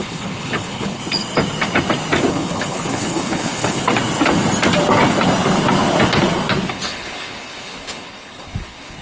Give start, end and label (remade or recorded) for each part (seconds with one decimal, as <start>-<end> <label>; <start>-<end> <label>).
0.0-1.0 remade; 1.0-2.3 recorded; 2.3-3.8 remade; 3.8-6.7 recorded; 6.7-9.0 remade